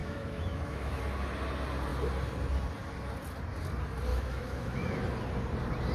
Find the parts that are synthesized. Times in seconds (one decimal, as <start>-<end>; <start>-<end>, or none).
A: 0.0-1.0; 4.1-5.0